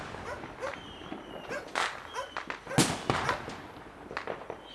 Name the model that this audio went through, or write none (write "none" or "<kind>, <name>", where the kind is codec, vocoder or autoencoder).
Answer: none